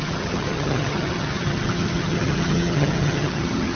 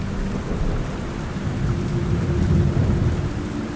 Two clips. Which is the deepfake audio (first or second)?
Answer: first